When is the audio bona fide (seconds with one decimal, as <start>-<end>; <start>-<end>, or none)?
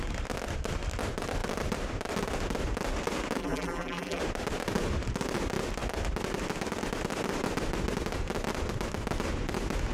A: 0.0-3.4; 4.2-9.9